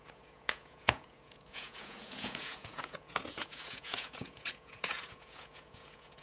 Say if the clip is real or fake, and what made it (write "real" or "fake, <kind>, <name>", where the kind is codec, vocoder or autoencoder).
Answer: fake, vocoder, Vocos